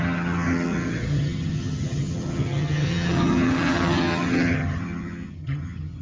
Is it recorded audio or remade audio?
remade